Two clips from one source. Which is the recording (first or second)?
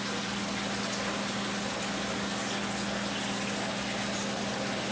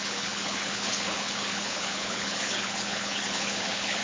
first